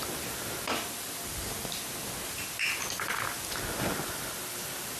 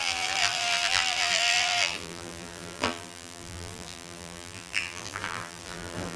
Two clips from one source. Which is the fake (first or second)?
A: second